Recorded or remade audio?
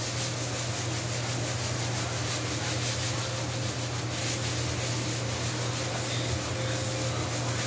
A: recorded